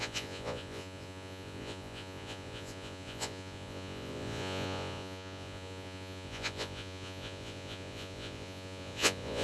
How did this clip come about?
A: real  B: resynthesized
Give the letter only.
B